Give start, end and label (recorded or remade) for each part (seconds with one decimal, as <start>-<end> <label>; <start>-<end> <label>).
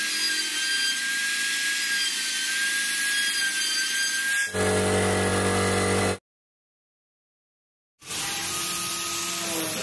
0.0-9.8 recorded